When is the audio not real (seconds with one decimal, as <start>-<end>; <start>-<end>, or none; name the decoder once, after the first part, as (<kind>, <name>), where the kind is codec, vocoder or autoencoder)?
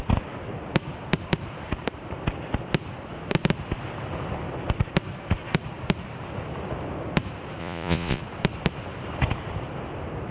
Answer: 7.6-8.2 (vocoder, Vocos)